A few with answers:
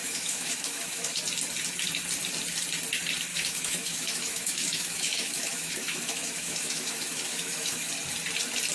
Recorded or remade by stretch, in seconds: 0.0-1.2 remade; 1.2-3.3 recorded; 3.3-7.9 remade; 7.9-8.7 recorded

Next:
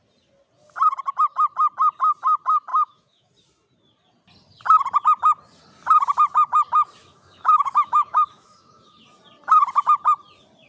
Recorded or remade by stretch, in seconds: 0.0-2.7 recorded; 2.7-3.3 remade; 3.3-7.0 recorded; 7.0-9.0 remade; 9.0-10.7 recorded

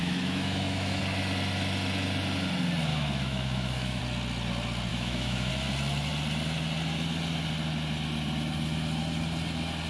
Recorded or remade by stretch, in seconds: 0.0-1.0 remade; 1.0-2.9 recorded; 2.9-4.0 remade; 4.0-4.9 recorded; 4.9-5.5 remade; 5.5-9.9 recorded

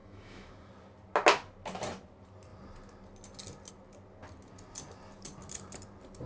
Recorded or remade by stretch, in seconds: 0.0-0.7 remade; 0.7-6.3 recorded

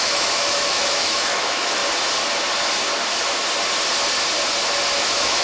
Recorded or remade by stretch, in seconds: 0.0-1.8 remade; 1.8-5.0 recorded; 5.0-5.4 remade

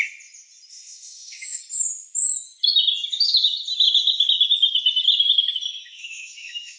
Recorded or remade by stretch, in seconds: 0.0-0.7 recorded; 0.7-1.6 remade; 1.6-5.8 recorded; 5.8-6.8 remade